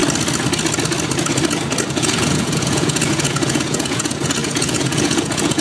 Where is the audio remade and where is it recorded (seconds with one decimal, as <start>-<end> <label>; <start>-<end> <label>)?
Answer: 0.0-1.9 recorded; 1.9-5.6 remade